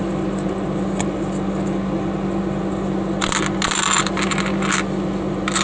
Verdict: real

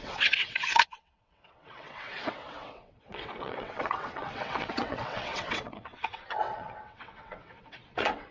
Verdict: fake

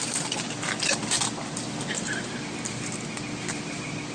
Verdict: real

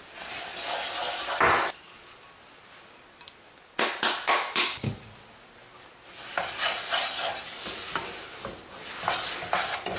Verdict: real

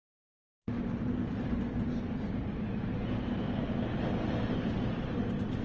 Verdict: real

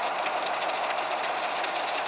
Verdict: real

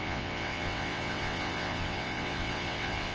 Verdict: fake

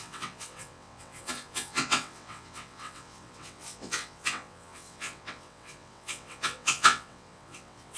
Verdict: fake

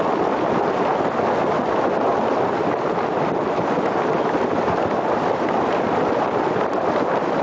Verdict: real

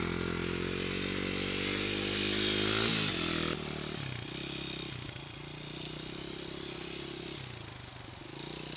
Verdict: real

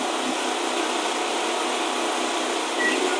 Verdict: real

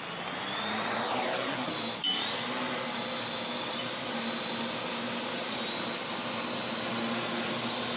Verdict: real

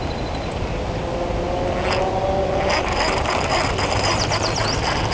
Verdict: real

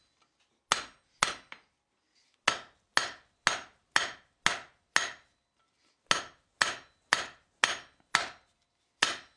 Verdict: real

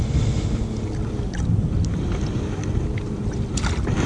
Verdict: real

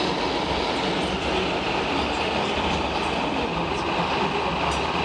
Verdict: real